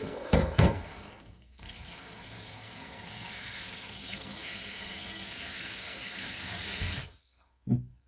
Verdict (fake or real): fake